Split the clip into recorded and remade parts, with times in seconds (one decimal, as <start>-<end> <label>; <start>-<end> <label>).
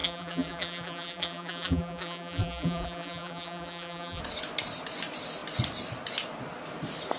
0.0-4.2 remade; 4.2-7.2 recorded